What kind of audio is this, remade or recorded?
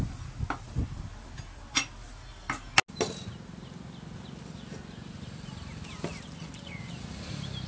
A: recorded